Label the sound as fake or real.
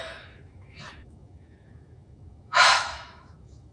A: fake